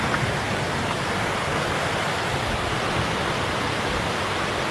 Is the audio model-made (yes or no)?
no